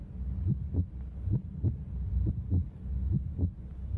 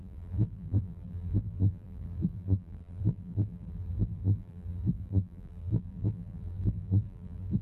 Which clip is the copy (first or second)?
second